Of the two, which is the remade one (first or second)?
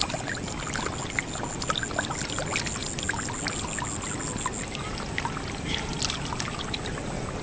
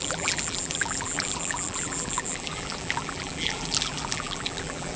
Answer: second